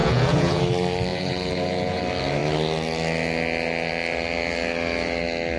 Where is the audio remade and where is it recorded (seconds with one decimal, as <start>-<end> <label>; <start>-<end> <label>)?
0.0-0.6 remade; 0.6-1.1 recorded; 1.1-2.0 remade; 2.0-5.6 recorded